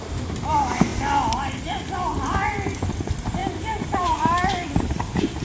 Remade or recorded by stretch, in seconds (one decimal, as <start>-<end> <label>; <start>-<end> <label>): 0.0-0.9 remade; 0.9-3.0 recorded; 3.0-5.4 remade